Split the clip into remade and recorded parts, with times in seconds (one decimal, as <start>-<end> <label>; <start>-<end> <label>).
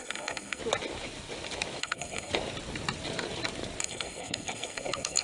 0.0-0.6 remade; 0.6-1.8 recorded; 1.8-2.3 remade; 2.3-3.8 recorded; 3.8-5.2 remade